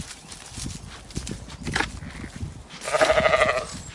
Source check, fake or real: real